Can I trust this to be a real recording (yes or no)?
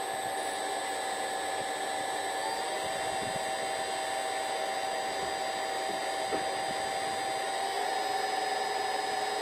yes